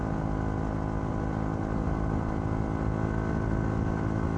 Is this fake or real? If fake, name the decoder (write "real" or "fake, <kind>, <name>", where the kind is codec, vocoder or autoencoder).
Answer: real